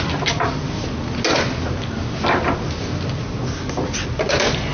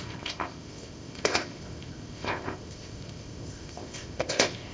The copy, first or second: second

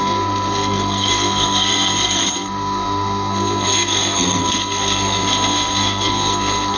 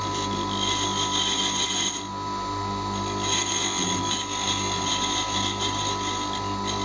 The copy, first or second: first